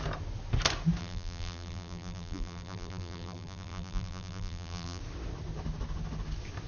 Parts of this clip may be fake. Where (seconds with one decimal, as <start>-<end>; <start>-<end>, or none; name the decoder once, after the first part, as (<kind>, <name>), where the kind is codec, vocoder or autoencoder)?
1.0-5.0 (vocoder, BigVGAN v2)